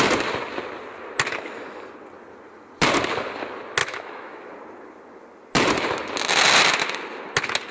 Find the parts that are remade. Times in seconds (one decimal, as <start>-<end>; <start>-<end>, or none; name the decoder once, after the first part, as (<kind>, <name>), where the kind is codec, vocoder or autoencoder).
3.8-4.5 (autoencoder, DAC-VAE)